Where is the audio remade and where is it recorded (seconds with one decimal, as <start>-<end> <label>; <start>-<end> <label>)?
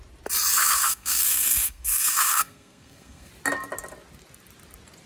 0.0-0.6 recorded; 0.6-3.3 remade; 3.3-5.1 recorded